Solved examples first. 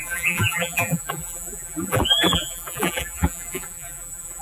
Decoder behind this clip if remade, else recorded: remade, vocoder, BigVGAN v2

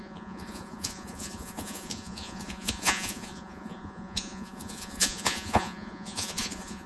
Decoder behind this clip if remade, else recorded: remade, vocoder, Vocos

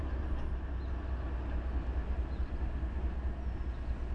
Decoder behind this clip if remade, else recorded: recorded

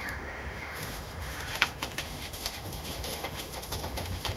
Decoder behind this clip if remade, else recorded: remade, autoencoder, DAC-VAE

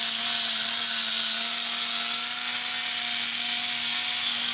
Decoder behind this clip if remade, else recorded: recorded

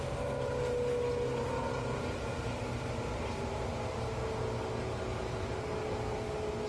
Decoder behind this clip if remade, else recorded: recorded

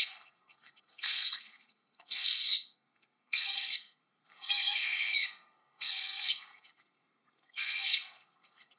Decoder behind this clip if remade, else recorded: remade, codec, SNAC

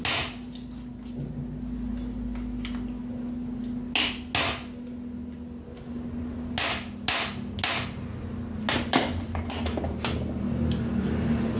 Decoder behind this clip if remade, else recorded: recorded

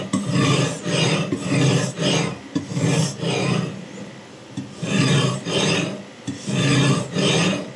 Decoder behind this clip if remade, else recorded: recorded